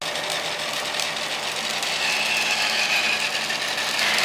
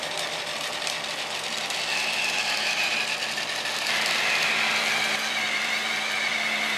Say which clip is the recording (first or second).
first